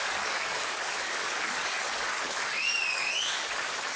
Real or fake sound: fake